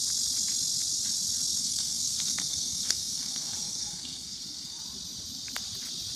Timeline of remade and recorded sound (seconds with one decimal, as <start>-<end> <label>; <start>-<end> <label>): 0.0-1.6 recorded; 1.6-4.8 remade; 4.8-6.2 recorded

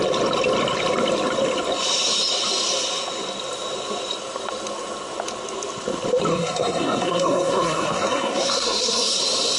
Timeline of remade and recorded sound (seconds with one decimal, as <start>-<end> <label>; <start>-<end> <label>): 0.0-6.3 recorded; 6.3-9.2 remade; 9.2-9.6 recorded

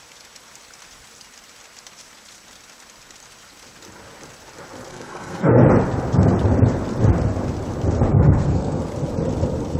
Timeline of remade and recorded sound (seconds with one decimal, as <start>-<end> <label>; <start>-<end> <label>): 0.0-4.9 recorded; 4.9-5.6 remade; 5.6-8.1 recorded; 8.1-8.8 remade; 8.8-9.8 recorded

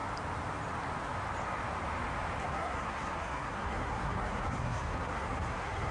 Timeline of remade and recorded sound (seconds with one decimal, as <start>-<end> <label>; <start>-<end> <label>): 0.0-2.4 recorded; 2.4-5.9 remade

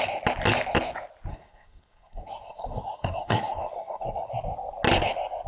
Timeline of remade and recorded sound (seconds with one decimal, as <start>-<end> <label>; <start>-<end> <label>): 0.0-1.3 recorded; 1.3-4.3 remade; 4.3-5.5 recorded

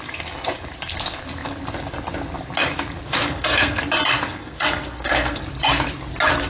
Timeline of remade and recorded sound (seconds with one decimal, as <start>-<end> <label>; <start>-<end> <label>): 0.0-3.1 recorded; 3.1-3.8 remade; 3.8-4.2 recorded; 4.2-5.4 remade; 5.4-6.5 recorded

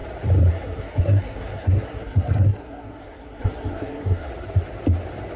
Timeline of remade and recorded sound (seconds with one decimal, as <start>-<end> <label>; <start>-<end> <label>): 0.0-0.5 recorded; 0.5-4.3 remade; 4.3-5.4 recorded